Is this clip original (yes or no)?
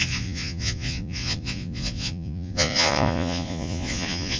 no